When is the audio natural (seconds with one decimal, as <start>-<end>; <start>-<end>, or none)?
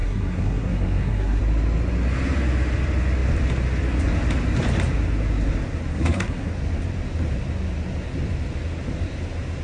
1.4-5.9; 6.5-9.6